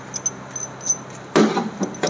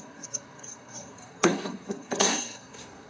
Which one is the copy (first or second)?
second